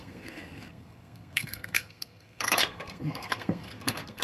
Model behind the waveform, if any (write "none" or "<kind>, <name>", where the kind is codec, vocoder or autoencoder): codec, SNAC